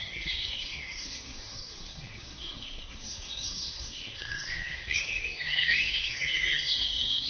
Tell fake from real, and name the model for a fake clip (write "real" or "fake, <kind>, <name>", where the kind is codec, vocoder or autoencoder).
fake, codec, SNAC